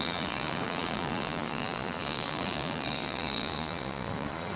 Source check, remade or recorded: remade